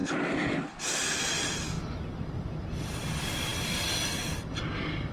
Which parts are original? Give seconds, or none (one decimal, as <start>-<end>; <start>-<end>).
0.0-3.1